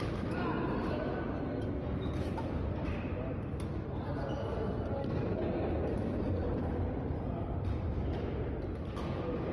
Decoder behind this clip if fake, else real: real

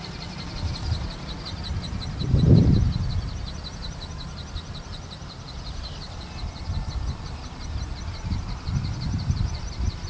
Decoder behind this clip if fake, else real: fake, vocoder, BigVGAN v2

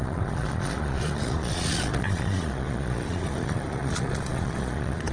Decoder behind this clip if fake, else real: fake, vocoder, Vocos